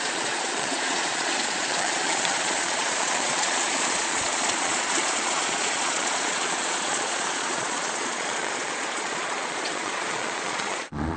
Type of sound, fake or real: fake